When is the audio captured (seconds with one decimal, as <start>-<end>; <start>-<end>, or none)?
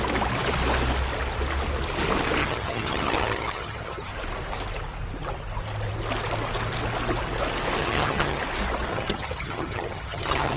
0.0-2.4; 4.1-7.8; 8.4-8.9